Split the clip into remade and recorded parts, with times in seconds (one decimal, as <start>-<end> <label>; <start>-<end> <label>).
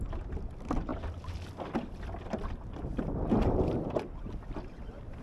0.0-5.2 recorded